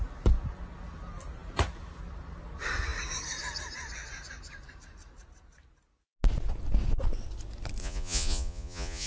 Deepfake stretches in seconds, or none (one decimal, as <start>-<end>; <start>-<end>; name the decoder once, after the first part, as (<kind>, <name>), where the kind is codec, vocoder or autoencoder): 7.8-9.1 (vocoder, Vocos)